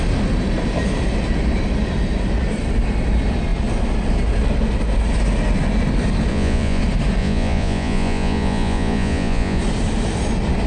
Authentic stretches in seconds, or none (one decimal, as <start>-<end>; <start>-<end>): 0.0-6.3; 6.8-7.2; 9.6-10.7